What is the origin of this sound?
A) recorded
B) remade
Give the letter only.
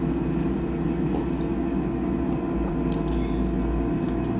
A